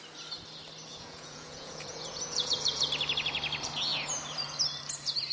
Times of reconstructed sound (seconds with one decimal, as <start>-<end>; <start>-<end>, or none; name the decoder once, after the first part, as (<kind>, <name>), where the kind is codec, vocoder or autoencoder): 0.9-2.5 (vocoder, Vocos)